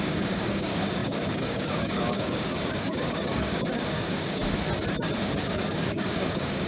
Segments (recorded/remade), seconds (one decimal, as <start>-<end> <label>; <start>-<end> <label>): 0.0-4.4 remade; 4.4-5.7 recorded; 5.7-6.7 remade